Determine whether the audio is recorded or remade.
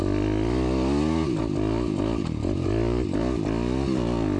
recorded